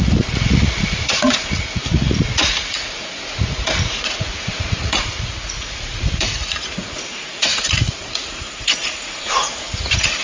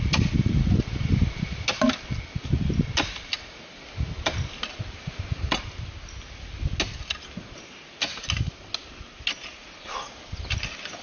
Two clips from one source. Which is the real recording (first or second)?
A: second